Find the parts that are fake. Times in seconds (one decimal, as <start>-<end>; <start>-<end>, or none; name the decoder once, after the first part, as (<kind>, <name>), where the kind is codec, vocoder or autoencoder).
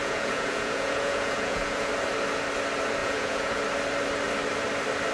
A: 0.0-1.9 (vocoder, Vocos); 3.0-3.6